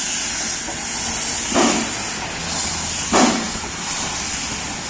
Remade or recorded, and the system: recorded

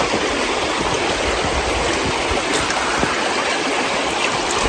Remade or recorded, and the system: recorded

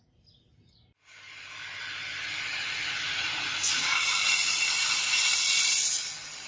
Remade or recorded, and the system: recorded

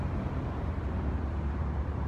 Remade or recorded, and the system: recorded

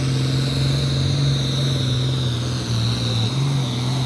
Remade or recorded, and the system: recorded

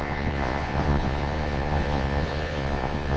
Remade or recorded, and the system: remade, vocoder, Vocos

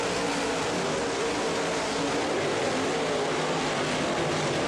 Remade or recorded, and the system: recorded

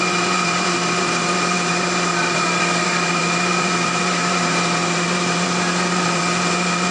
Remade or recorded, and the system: remade, vocoder, BigVGAN v2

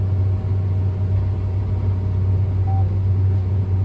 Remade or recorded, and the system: recorded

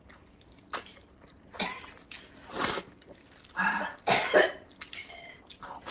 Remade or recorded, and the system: remade, vocoder, BigVGAN v2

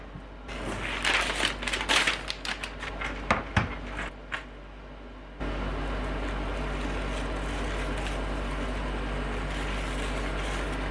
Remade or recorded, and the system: recorded